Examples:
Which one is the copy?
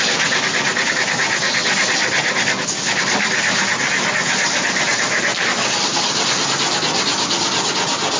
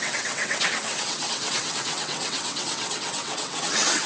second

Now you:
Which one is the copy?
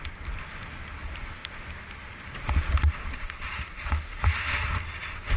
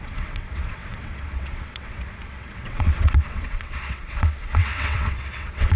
second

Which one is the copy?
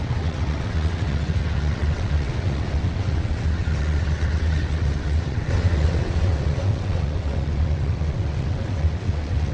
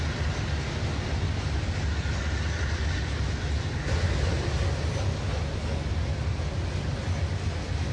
first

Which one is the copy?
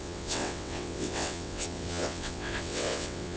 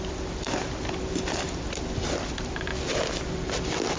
first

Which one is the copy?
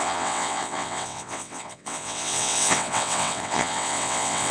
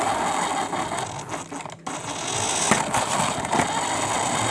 first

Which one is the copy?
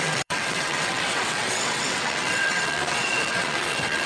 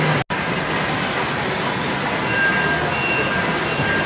first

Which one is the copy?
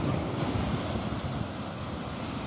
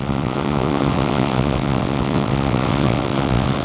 second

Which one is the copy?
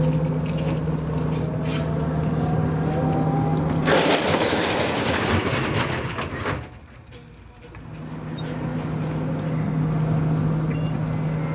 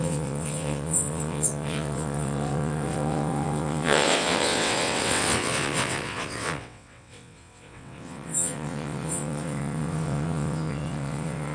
second